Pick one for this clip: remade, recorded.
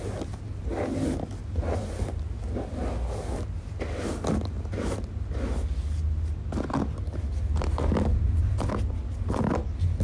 recorded